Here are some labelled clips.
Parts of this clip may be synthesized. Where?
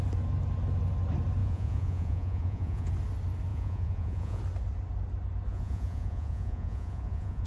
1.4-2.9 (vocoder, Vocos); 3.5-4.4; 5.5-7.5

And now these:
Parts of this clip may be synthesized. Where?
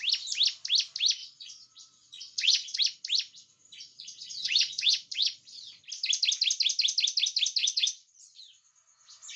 1.2-2.8 (vocoder, Vocos); 3.9-5.8; 7.6-8.4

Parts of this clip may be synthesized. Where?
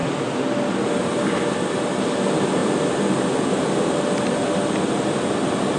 none